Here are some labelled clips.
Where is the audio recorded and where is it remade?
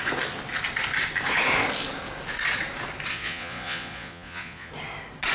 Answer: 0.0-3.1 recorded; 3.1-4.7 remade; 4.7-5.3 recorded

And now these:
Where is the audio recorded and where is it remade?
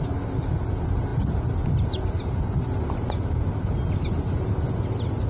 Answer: 0.0-5.3 recorded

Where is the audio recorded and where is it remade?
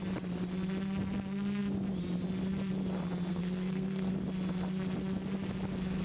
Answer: 0.0-3.3 recorded; 3.3-4.1 remade; 4.1-6.0 recorded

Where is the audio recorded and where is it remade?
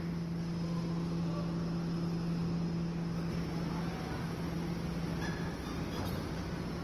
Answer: 0.0-6.8 recorded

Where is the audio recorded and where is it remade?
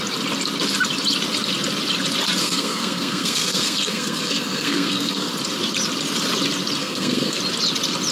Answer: 0.0-2.4 recorded; 2.4-5.3 remade; 5.3-6.8 recorded; 6.8-7.4 remade; 7.4-8.1 recorded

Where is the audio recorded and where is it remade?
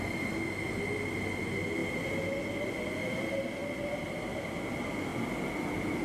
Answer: 0.0-3.6 recorded; 3.6-4.1 remade; 4.1-6.0 recorded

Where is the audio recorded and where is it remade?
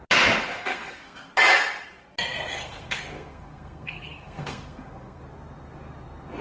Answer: 0.0-0.4 recorded; 0.4-1.3 remade; 1.3-2.5 recorded; 2.5-5.2 remade; 5.2-6.4 recorded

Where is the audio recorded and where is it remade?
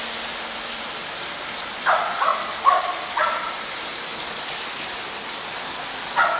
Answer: 0.0-6.4 recorded